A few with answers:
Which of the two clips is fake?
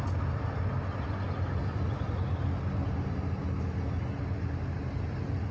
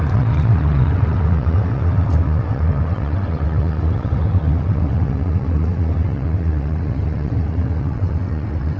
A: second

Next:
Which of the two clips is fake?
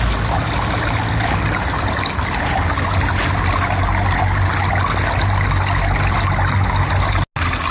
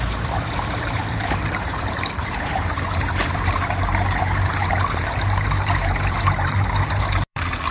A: second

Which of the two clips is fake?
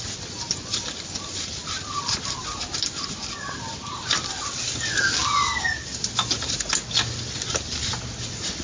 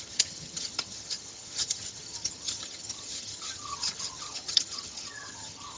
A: second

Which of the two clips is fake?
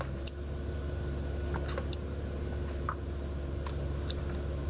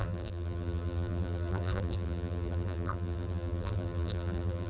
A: second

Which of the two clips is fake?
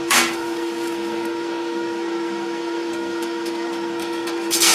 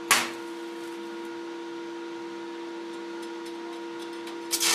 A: first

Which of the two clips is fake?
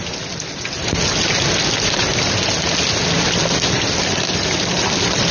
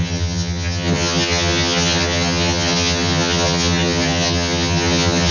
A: second